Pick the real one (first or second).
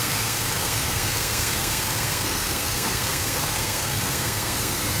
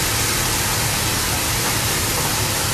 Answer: second